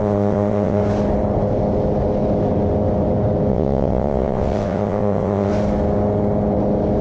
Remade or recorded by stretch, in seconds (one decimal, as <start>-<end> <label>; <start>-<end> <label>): 0.0-0.8 remade; 0.8-3.5 recorded; 3.5-5.5 remade; 5.5-7.0 recorded